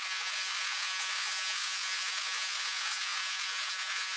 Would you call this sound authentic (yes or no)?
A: no